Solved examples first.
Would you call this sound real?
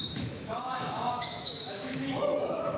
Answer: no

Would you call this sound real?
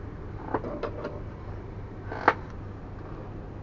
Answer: yes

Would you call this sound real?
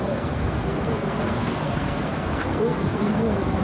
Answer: no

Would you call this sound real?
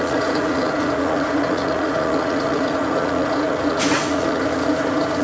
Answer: no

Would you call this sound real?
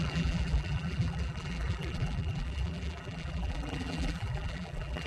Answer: no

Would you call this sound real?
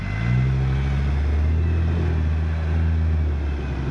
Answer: yes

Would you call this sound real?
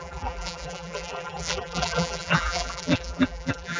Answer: no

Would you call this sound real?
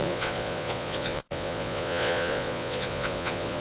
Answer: no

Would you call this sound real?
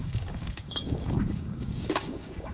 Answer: no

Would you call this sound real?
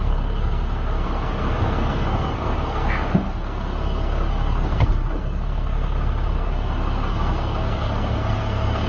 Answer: no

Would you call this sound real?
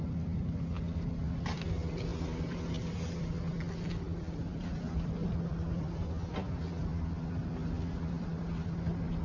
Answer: yes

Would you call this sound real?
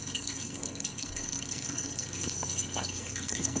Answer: no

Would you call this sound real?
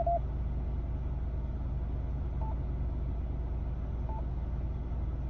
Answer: yes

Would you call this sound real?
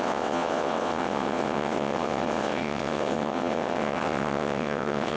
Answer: no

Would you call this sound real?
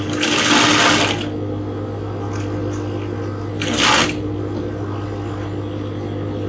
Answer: yes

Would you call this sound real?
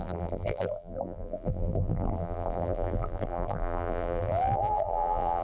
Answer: no